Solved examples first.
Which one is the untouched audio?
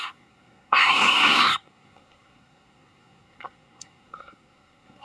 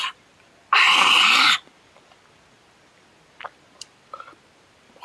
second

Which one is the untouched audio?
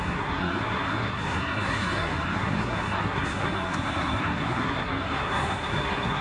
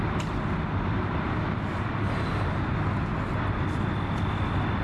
second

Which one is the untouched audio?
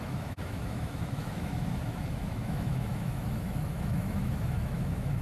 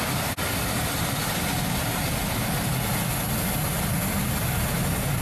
second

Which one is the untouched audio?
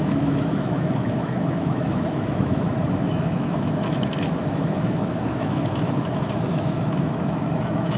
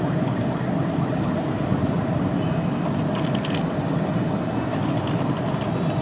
second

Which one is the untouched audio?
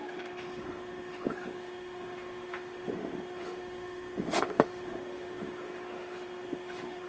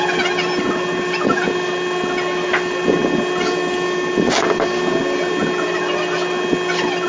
second